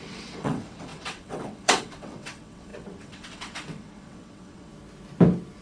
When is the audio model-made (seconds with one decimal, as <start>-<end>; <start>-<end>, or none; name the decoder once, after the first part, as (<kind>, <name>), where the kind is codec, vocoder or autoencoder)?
0.0-4.7 (vocoder, WaveNeXt)